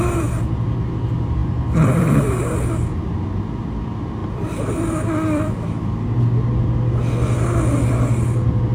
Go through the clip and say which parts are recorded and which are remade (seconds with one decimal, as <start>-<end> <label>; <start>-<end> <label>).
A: 0.0-1.4 recorded; 1.4-2.1 remade; 2.1-4.2 recorded; 4.2-6.0 remade; 6.0-8.7 recorded